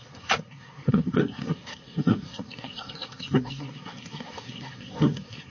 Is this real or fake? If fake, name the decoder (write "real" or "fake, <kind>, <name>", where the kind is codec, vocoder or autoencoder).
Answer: fake, codec, SNAC